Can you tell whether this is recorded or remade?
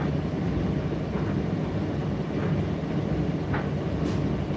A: recorded